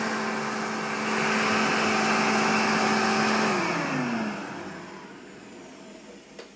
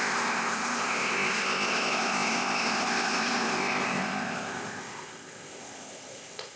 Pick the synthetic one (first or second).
second